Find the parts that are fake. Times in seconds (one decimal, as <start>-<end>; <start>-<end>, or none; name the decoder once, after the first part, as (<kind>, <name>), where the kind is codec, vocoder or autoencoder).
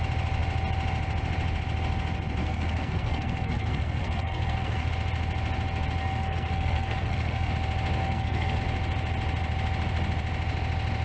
2.4-4.9 (codec, SNAC); 6.0-7.5; 8.0-8.6